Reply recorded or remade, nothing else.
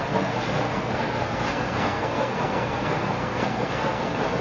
remade